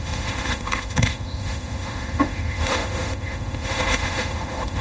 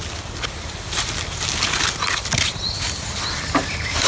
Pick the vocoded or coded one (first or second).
first